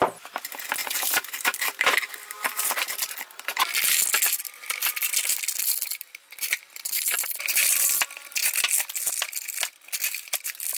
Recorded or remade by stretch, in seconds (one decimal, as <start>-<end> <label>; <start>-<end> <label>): 0.0-0.8 recorded; 0.8-2.7 remade; 2.7-10.8 recorded